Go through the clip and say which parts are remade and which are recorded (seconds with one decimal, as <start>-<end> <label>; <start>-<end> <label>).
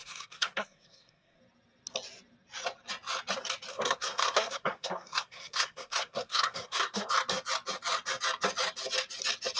0.0-1.4 remade; 1.4-3.7 recorded; 3.7-7.1 remade; 7.1-9.6 recorded